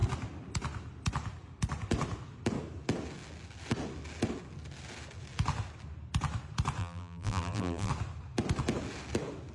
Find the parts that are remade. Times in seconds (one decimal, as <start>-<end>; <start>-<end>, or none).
6.8-7.9

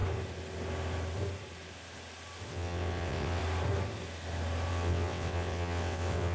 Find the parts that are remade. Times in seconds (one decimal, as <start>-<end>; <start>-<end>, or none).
2.5-3.4; 4.7-6.3

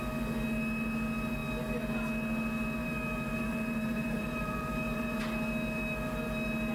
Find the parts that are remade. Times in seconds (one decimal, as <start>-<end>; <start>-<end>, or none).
2.8-5.2

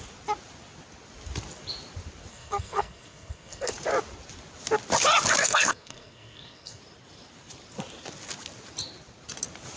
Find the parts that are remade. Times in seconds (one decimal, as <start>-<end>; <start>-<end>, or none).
2.3-3.7; 5.4-6.8